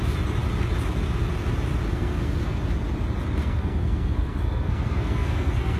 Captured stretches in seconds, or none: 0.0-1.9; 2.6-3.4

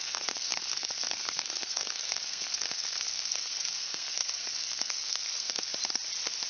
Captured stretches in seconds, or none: 5.7-6.5

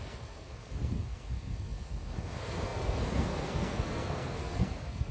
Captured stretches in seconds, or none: none

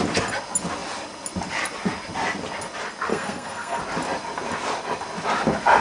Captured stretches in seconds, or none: 0.0-3.1; 3.8-5.8

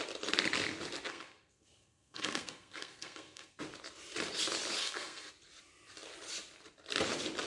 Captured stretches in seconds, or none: 0.0-1.1; 3.6-4.8; 5.3-7.5